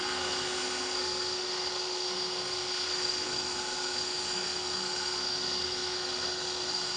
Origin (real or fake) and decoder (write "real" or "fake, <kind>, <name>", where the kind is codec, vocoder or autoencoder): fake, codec, SNAC